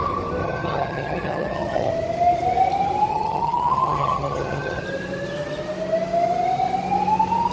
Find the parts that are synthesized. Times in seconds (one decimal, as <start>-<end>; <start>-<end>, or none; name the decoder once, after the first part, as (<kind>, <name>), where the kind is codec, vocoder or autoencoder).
0.4-1.9 (vocoder, HiFi-GAN); 3.1-4.8